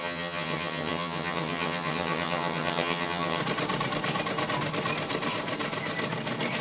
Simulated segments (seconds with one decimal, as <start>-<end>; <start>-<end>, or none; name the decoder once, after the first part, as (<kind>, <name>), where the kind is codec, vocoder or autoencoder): 0.0-3.4 (vocoder, HiFi-GAN)